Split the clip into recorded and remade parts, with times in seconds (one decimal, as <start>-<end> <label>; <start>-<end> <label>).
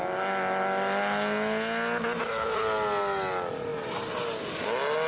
0.0-5.1 recorded